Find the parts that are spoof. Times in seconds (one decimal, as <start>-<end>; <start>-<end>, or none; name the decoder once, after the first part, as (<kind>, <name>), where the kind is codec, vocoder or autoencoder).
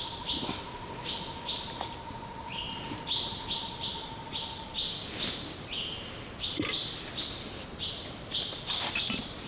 none